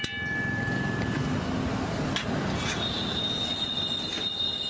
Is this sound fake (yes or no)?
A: no